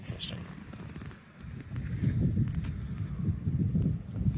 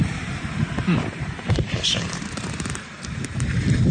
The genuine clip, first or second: first